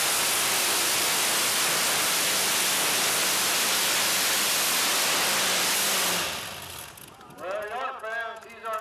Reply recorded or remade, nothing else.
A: recorded